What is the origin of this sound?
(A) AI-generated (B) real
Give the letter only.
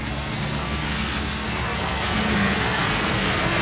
A